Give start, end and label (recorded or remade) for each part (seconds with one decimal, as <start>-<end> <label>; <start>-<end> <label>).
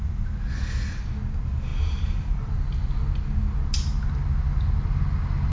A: 0.0-1.7 recorded; 1.7-2.5 remade; 2.5-5.5 recorded